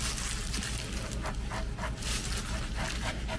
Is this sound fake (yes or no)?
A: no